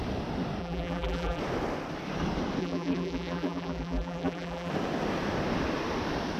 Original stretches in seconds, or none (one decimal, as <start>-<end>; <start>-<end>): 0.0-0.6; 1.4-2.6; 4.7-6.4